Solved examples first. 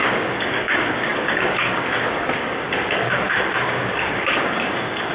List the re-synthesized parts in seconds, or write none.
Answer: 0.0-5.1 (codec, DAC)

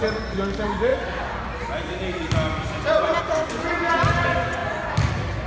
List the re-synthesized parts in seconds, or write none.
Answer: none

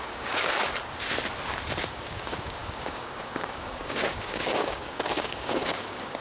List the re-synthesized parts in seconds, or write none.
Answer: 0.0-0.5 (codec, DAC); 1.9-6.2

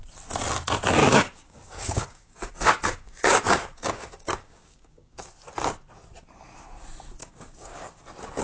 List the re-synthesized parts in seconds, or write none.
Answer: 1.0-5.3 (codec, DAC); 7.2-7.9

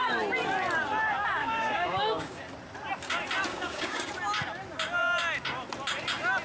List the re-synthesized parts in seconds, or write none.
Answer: 1.4-2.4 (codec, DAC); 3.5-4.1

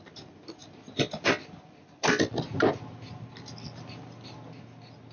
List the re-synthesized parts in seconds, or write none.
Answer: none